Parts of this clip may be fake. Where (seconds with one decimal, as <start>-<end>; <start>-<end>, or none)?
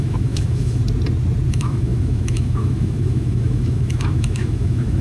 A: 0.0-0.8; 1.5-5.0